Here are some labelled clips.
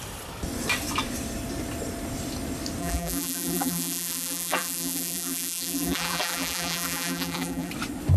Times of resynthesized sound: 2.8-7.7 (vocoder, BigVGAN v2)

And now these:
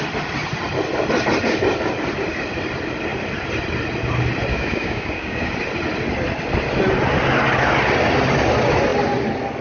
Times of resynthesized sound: 4.5-5.5 (codec, DAC)

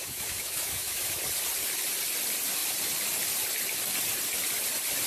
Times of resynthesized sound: 0.0-1.2 (autoencoder, DAC-VAE)

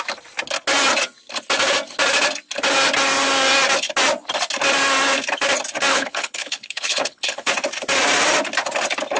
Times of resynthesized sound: 5.9-7.5 (codec, HILCodec)

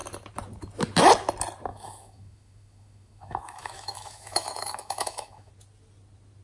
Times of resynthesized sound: 1.7-5.5 (autoencoder, DAC-VAE)

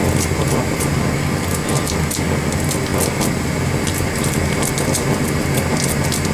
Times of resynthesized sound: none